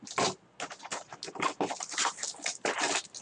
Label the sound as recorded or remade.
recorded